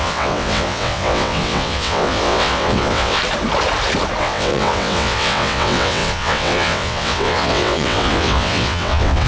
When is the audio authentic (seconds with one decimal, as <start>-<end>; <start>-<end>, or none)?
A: 3.2-4.2